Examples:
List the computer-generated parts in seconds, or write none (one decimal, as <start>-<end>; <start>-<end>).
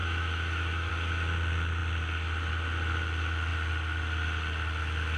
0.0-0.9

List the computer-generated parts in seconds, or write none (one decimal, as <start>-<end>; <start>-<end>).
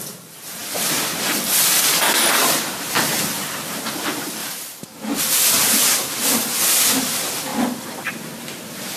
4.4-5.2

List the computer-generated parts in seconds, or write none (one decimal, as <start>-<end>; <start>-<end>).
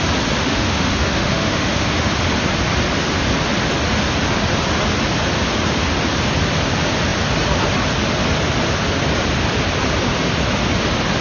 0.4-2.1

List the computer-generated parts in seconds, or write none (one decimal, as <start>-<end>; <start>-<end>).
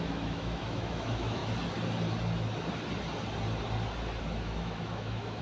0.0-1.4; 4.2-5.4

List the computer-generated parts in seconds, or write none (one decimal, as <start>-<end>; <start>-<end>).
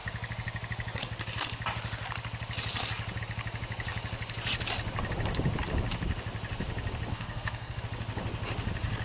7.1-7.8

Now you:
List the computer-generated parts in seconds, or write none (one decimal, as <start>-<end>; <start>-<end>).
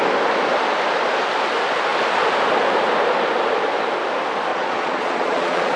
4.5-5.8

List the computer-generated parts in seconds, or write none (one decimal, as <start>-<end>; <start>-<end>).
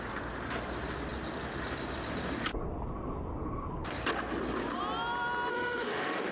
5.5-6.3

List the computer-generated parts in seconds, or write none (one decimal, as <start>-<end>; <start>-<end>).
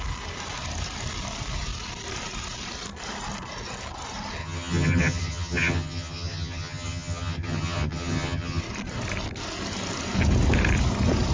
4.4-8.6